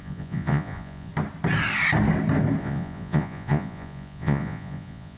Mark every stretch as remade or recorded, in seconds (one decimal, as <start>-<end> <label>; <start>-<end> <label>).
0.0-1.1 remade; 1.1-2.6 recorded; 2.6-5.2 remade